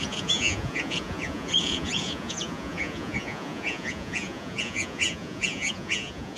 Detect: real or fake fake